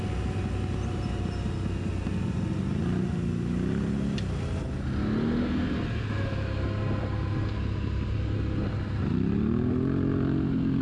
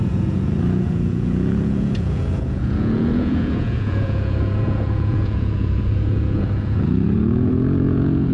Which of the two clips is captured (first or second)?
first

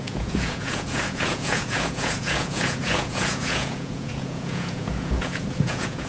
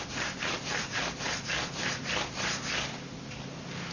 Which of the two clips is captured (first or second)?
second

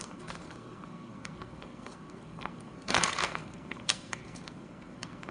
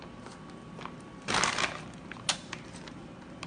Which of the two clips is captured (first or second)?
second